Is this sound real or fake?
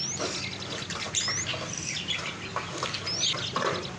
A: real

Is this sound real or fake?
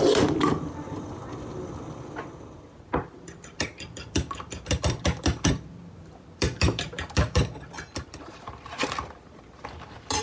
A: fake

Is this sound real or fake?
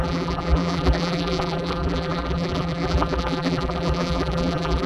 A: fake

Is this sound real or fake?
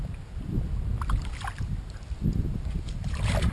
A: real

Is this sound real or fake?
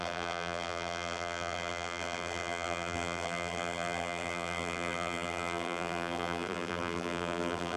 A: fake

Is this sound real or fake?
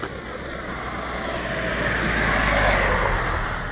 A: real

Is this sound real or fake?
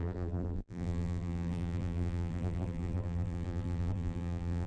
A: fake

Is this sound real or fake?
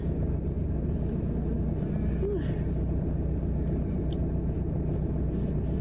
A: real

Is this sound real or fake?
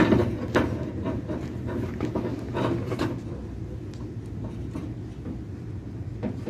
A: real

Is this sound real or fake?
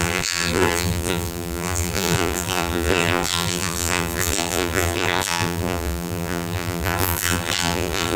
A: fake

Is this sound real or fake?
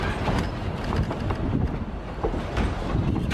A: real